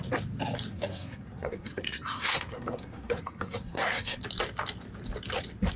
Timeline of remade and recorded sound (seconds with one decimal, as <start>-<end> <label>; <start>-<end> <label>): 0.0-0.7 recorded; 0.7-4.2 remade; 4.2-5.8 recorded

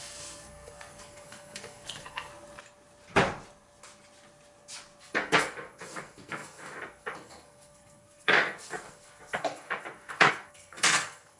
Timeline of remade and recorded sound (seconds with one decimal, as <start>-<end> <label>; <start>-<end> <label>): 0.0-2.3 remade; 2.3-5.0 recorded; 5.0-11.4 remade

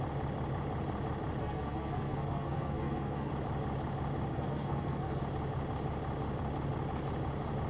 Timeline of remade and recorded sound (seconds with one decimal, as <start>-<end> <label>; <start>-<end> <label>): 0.0-1.4 recorded; 1.4-3.3 remade; 3.3-4.3 recorded; 4.3-5.2 remade; 5.2-7.7 recorded

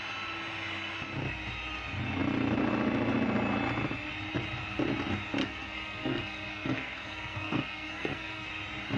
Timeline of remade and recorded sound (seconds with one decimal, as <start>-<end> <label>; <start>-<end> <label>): 0.0-5.4 recorded; 5.4-8.5 remade; 8.5-9.0 recorded

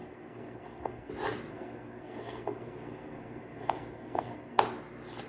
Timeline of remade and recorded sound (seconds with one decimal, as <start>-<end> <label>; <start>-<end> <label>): 0.0-1.1 remade; 1.1-1.5 recorded; 1.5-4.6 remade; 4.6-5.3 recorded

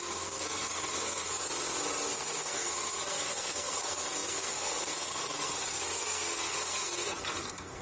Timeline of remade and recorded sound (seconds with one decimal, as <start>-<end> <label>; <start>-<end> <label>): 0.0-1.5 remade; 1.5-2.1 recorded; 2.1-7.8 remade